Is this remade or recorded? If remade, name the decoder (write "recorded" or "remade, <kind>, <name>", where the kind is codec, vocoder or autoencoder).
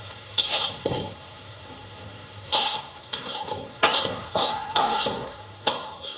remade, codec, SNAC